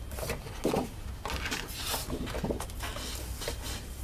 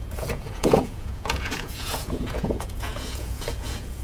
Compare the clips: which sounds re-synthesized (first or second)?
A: second